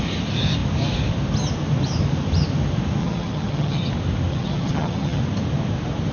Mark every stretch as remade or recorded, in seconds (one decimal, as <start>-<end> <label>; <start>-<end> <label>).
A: 0.0-3.0 recorded; 3.0-3.9 remade; 3.9-4.3 recorded; 4.3-5.2 remade; 5.2-6.1 recorded